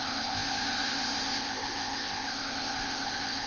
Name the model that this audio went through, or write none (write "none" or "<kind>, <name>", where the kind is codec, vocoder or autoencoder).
codec, ZipCodec